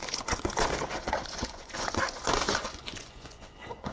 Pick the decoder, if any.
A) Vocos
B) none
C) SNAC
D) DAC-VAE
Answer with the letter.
A